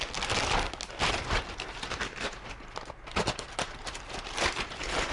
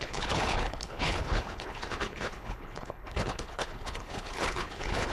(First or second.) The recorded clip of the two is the first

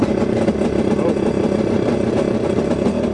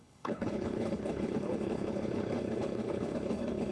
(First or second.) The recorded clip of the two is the first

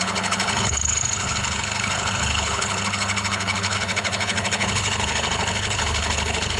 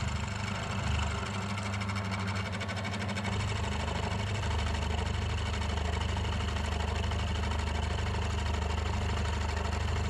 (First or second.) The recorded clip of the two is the second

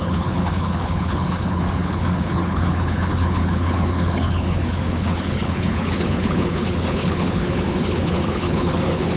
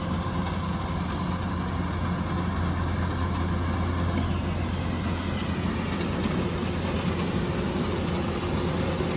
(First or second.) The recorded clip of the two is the second